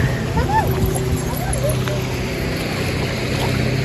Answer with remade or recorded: recorded